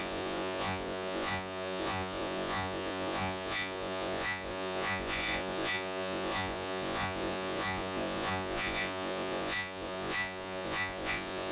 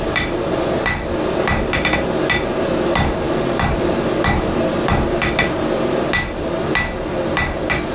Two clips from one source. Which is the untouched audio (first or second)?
second